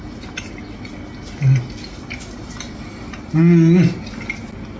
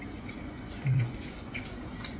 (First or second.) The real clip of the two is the first